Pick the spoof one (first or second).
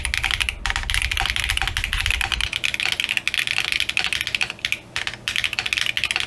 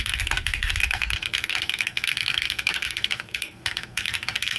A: second